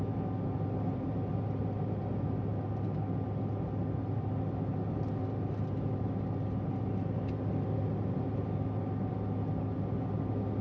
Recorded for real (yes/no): yes